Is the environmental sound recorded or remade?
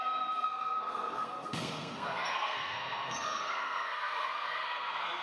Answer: remade